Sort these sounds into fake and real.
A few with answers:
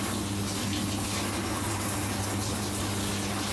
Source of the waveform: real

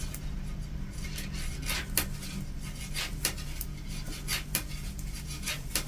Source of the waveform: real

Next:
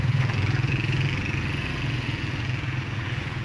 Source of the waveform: fake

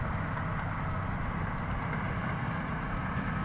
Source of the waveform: real